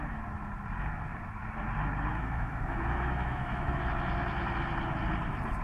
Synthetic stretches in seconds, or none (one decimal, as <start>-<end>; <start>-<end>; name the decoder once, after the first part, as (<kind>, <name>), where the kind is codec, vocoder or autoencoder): 2.1-3.8 (autoencoder, DAC-VAE)